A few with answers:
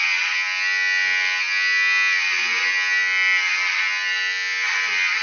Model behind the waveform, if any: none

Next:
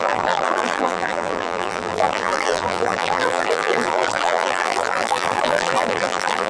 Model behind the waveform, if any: vocoder, BigVGAN v2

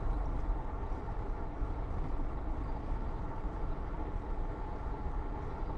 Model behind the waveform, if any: none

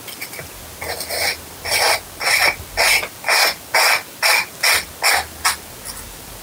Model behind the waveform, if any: none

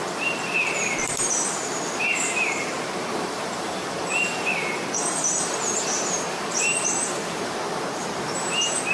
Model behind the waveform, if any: vocoder, BigVGAN v2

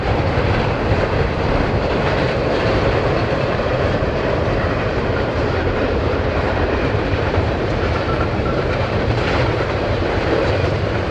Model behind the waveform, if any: vocoder, BigVGAN v2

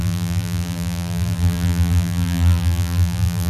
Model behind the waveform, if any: vocoder, BigVGAN v2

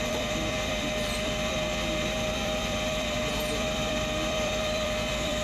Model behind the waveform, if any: vocoder, BigVGAN v2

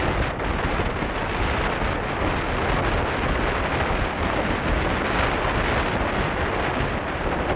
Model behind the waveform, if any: none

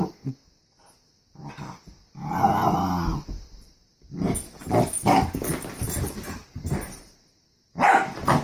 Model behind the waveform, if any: none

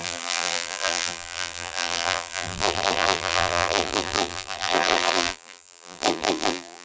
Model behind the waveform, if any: vocoder, BigVGAN v2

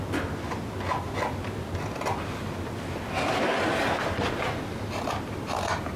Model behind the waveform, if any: none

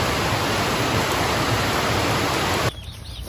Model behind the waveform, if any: none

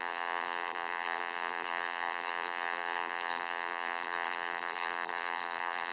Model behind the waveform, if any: vocoder, BigVGAN v2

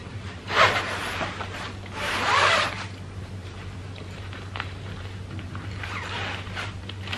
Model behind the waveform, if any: vocoder, BigVGAN v2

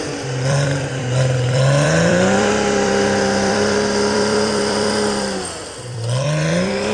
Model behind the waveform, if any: vocoder, BigVGAN v2